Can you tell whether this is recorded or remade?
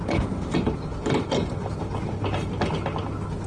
recorded